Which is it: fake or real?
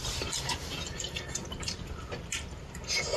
real